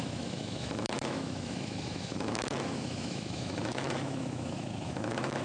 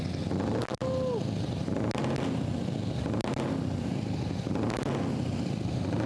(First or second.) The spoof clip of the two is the first